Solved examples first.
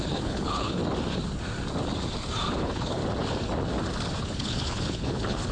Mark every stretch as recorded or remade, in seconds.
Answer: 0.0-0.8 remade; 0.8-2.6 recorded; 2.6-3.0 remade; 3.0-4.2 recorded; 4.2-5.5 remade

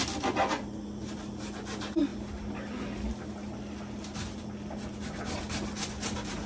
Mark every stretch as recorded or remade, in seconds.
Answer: 0.0-6.5 recorded

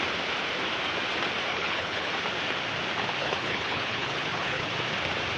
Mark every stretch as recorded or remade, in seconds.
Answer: 0.0-1.5 recorded; 1.5-2.1 remade; 2.1-3.2 recorded; 3.2-4.7 remade; 4.7-5.4 recorded

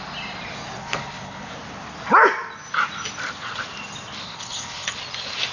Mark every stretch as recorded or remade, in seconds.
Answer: 0.0-0.8 recorded; 0.8-1.5 remade; 1.5-4.3 recorded; 4.3-4.9 remade; 4.9-5.5 recorded

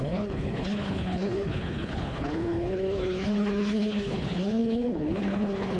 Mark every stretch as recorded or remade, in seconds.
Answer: 0.0-5.8 remade